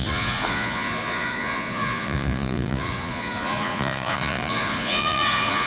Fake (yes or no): yes